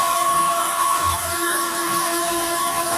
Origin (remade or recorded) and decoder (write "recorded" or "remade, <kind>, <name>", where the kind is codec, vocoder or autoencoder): remade, codec, DAC